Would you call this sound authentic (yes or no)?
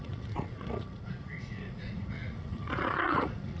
no